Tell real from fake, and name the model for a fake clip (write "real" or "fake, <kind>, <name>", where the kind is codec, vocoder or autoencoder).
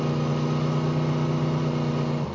real